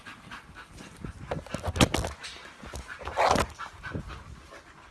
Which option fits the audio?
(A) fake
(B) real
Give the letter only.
B